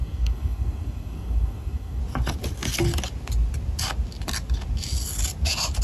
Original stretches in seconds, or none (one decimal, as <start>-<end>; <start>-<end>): 2.0-5.8